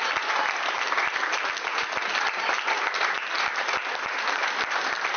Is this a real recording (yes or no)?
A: yes